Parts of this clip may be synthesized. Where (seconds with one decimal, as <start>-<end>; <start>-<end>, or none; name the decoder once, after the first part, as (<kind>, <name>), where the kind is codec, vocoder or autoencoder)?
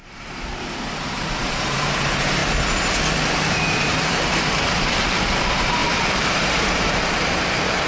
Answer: 0.0-2.4 (vocoder, BigVGAN v2); 3.3-7.9